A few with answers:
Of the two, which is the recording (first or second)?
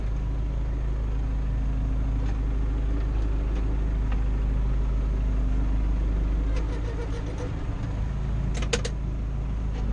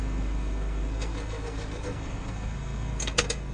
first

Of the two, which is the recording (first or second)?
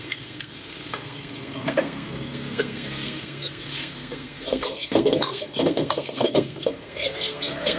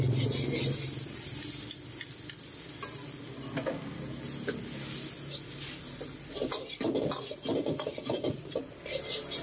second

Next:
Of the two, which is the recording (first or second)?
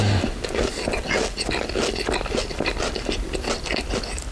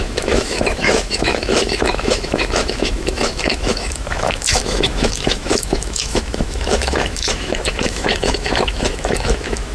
first